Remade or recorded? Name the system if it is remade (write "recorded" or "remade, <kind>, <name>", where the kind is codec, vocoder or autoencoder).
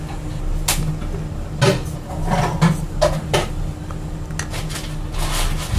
recorded